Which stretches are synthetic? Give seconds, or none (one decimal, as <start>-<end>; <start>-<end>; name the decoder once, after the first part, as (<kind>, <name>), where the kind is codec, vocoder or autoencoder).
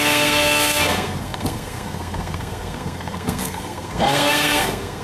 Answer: 0.0-5.0 (codec, SNAC)